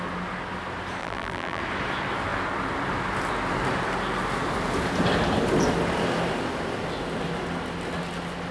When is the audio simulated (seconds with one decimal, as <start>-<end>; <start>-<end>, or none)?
1.0-1.6